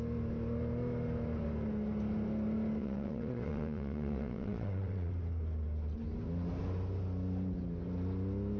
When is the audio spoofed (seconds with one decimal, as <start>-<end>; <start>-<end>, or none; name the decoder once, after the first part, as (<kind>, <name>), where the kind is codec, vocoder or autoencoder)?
2.8-5.1 (vocoder, WaveNeXt)